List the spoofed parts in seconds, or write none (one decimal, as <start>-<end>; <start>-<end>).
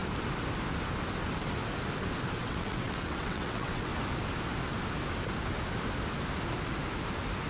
2.4-3.9